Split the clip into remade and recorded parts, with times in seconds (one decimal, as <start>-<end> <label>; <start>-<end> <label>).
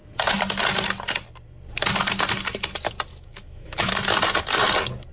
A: 0.0-3.1 recorded; 3.1-3.9 remade; 3.9-5.1 recorded